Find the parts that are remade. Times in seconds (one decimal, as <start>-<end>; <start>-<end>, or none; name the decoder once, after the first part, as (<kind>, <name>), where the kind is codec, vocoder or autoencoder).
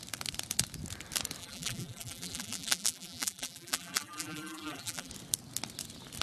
1.4-5.1 (vocoder, BigVGAN v2)